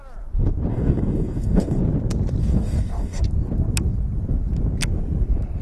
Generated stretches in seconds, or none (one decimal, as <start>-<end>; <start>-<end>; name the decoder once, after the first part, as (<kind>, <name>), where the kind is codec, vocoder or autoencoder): 0.7-1.8 (codec, DAC); 2.4-3.2